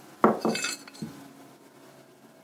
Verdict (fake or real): real